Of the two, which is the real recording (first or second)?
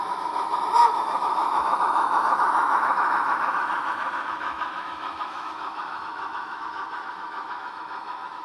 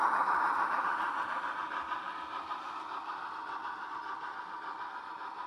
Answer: second